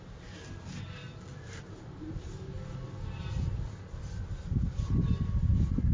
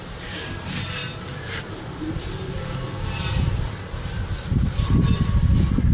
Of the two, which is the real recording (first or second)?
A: first